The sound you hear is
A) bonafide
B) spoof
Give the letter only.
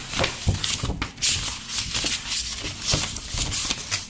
A